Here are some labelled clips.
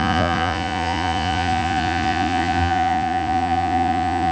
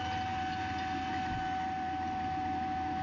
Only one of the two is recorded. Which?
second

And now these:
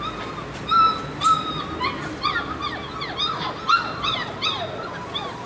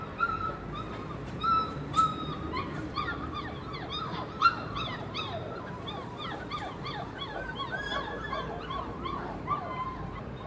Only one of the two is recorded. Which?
first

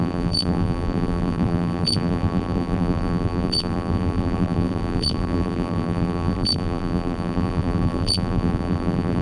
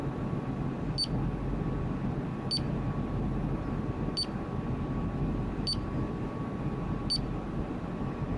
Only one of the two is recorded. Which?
second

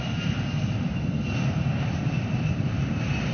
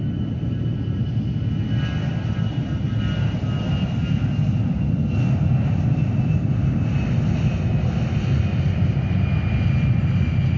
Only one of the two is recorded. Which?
second